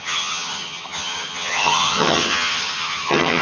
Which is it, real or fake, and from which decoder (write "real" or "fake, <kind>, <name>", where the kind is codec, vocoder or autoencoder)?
fake, vocoder, HiFi-GAN